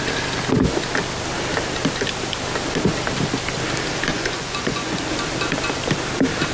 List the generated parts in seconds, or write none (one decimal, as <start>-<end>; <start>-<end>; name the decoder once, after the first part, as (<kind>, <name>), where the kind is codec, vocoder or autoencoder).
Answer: 4.1-5.1 (vocoder, Vocos)